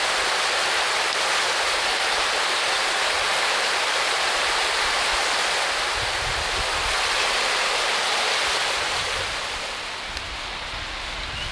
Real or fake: real